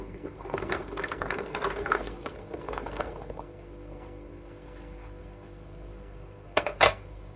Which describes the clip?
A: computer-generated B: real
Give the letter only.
A